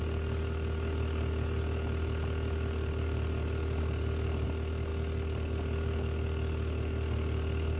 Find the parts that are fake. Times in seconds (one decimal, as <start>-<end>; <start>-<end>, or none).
0.0-4.9